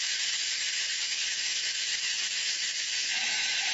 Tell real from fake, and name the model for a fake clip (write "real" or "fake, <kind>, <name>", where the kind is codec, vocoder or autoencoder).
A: fake, autoencoder, DAC-VAE